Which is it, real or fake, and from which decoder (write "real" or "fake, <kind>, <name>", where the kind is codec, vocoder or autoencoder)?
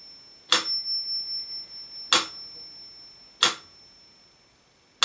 real